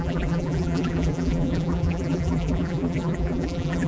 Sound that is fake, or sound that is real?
fake